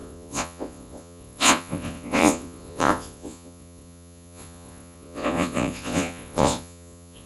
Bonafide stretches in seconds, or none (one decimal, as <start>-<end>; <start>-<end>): none